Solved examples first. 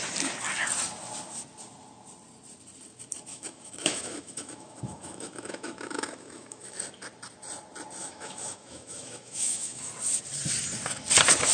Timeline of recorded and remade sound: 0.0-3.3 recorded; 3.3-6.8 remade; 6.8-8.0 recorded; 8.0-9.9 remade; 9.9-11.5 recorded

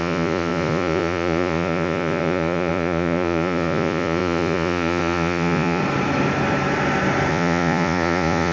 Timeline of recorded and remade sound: 0.0-5.8 remade; 5.8-7.3 recorded; 7.3-8.5 remade

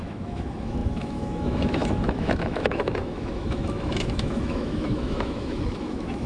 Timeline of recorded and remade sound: 0.0-6.3 remade